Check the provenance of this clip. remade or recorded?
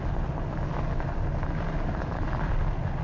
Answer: recorded